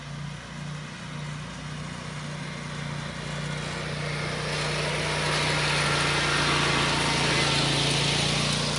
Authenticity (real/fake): real